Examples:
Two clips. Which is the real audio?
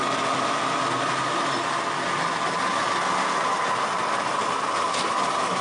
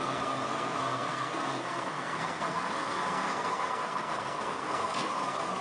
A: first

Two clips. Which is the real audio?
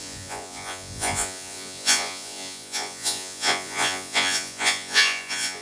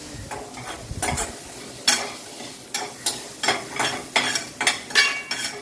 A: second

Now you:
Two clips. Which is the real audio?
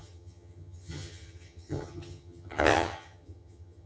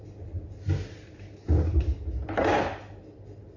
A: second